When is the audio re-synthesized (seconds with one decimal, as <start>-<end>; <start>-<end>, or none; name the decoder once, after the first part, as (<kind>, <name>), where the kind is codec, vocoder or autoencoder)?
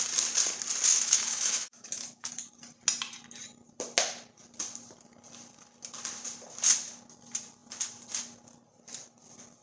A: 0.9-2.3 (autoencoder, DAC-VAE)